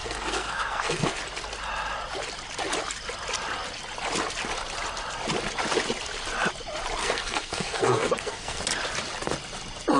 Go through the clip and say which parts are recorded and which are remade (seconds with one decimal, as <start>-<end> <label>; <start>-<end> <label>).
0.0-1.2 remade; 1.2-7.0 recorded; 7.0-8.6 remade; 8.6-10.0 recorded